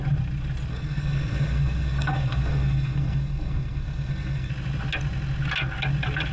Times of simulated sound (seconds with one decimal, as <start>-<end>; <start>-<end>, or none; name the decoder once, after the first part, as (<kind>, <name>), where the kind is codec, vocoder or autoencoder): 0.7-4.5 (codec, SNAC)